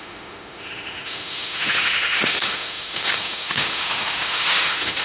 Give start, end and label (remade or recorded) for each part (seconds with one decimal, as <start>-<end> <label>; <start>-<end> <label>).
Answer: 0.0-5.0 remade